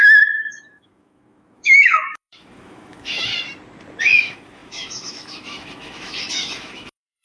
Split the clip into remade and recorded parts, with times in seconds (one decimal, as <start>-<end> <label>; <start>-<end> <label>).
0.0-3.3 remade; 3.3-4.0 recorded; 4.0-7.2 remade